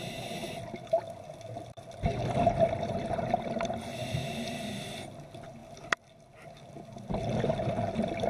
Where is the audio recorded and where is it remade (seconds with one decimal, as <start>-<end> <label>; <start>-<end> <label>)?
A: 0.0-0.4 recorded; 0.4-5.0 remade; 5.0-8.3 recorded